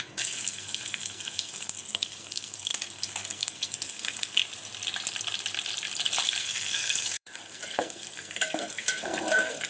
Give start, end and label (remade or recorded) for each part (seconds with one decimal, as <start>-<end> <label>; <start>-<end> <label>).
0.0-4.4 remade; 4.4-6.4 recorded; 6.4-9.7 remade

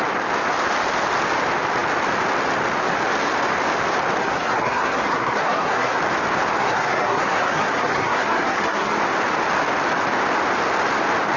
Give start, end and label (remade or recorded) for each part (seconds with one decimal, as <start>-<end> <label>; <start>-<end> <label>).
0.0-4.2 recorded; 4.2-6.0 remade; 6.0-6.6 recorded; 6.6-9.0 remade; 9.0-11.4 recorded

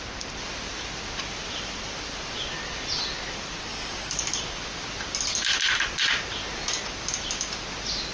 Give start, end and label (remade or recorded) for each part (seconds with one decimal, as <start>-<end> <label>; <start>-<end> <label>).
0.0-3.7 recorded; 3.7-4.3 remade; 4.3-8.1 recorded

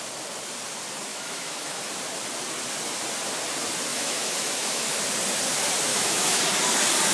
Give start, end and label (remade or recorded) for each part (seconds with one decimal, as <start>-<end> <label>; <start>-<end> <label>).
0.0-1.1 recorded; 1.1-1.8 remade; 1.8-3.9 recorded; 3.9-5.0 remade; 5.0-5.9 recorded; 5.9-6.4 remade; 6.4-7.1 recorded

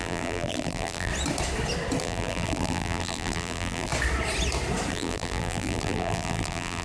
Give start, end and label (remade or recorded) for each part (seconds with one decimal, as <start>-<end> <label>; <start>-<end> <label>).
0.0-1.1 remade; 1.1-2.0 recorded; 2.0-3.9 remade; 3.9-4.9 recorded; 4.9-6.8 remade

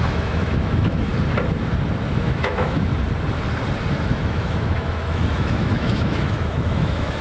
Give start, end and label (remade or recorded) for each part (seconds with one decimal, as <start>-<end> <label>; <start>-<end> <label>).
0.0-1.1 remade; 1.1-2.1 recorded; 2.1-2.9 remade; 2.9-3.9 recorded; 3.9-7.2 remade